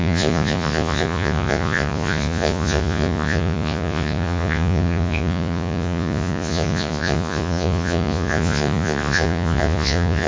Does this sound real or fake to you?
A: fake